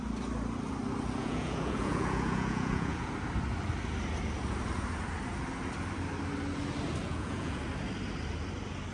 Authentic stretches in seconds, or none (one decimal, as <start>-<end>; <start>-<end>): 0.0-1.2; 3.1-7.0; 7.6-8.9